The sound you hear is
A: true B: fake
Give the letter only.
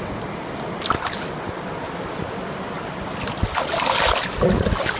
A